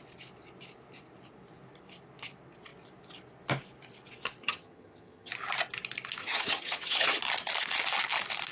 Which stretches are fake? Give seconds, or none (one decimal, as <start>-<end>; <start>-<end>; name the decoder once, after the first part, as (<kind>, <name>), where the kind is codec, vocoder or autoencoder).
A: 4.4-5.3 (vocoder, HiFi-GAN); 6.2-7.2